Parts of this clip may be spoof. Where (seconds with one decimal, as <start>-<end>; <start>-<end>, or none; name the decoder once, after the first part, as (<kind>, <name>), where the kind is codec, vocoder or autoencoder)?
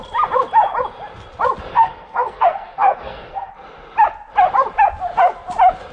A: 1.7-3.5 (codec, SNAC)